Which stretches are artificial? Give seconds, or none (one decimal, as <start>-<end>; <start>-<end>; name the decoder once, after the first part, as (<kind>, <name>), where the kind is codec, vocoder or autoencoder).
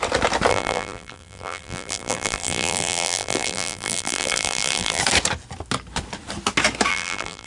0.5-5.0 (vocoder, BigVGAN v2); 6.9-7.5